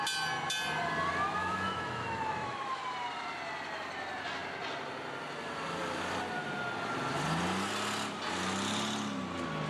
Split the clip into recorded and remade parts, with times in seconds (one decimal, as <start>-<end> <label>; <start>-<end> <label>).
0.0-1.4 recorded; 1.4-2.8 remade; 2.8-9.7 recorded